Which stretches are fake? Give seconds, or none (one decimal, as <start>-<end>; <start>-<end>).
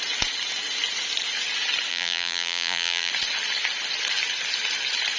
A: 1.9-3.1